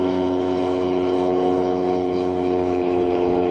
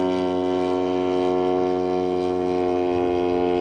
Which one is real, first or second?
second